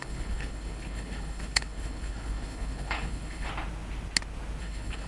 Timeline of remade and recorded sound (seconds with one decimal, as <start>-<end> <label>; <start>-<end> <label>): 0.0-3.5 remade; 3.5-4.6 recorded; 4.6-5.1 remade